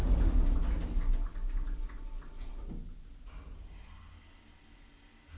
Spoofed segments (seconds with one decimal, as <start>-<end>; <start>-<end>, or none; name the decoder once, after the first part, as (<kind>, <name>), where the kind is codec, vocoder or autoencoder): none